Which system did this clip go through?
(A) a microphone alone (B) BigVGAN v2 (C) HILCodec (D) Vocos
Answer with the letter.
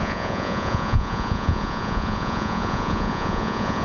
D